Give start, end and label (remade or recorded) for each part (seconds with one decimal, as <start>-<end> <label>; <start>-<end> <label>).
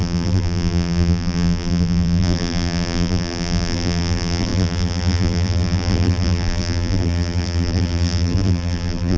0.0-9.2 remade